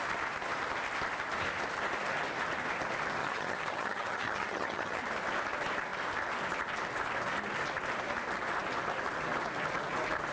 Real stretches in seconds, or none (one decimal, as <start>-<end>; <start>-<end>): 0.0-3.2; 5.0-10.3